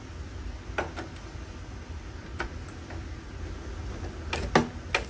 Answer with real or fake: real